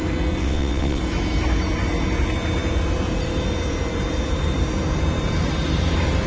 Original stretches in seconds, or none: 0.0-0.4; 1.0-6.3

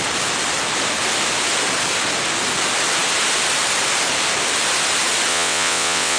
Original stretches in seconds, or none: 0.0-5.3

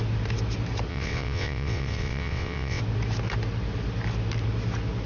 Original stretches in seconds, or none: 0.0-0.9; 2.8-5.1

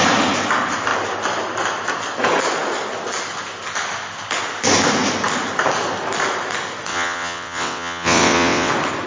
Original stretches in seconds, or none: 0.0-6.9; 8.7-9.1